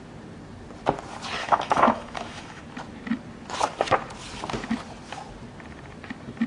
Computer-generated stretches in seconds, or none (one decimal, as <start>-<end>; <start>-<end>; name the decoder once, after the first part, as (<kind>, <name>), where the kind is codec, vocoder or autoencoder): 1.4-2.6 (autoencoder, DAC-VAE)

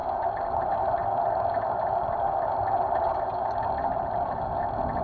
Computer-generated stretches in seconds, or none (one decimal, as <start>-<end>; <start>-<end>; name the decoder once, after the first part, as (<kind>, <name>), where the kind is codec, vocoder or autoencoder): none